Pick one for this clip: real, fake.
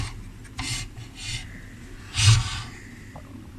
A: real